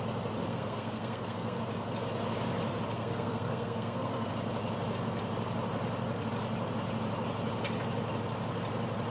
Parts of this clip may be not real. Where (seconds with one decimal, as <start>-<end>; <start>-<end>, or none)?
0.5-1.6; 2.9-4.3